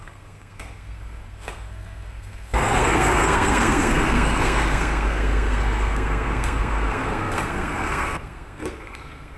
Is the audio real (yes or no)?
no